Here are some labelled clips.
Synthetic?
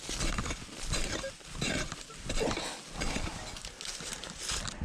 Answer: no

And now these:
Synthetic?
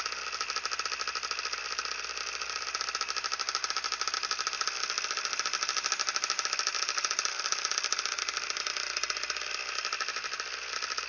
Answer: no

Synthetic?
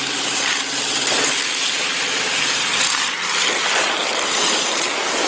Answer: yes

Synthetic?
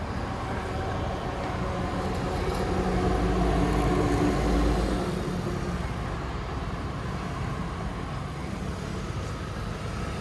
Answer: no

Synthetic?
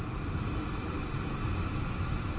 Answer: no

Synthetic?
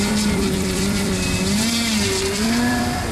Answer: yes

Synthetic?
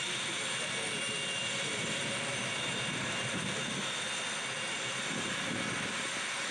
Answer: no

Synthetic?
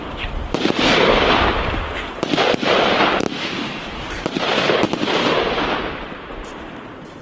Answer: yes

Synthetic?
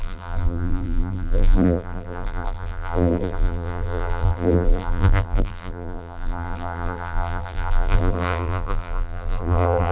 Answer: yes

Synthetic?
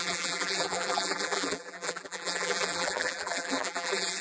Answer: yes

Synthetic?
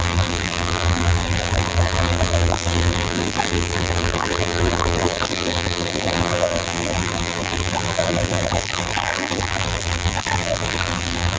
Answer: yes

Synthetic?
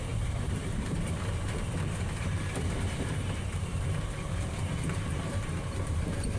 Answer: yes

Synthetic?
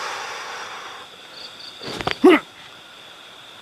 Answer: yes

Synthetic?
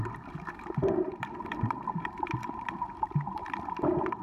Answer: yes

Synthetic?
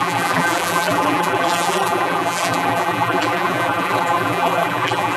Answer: yes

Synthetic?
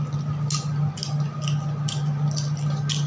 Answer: no